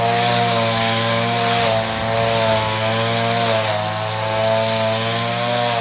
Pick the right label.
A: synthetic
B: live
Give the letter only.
B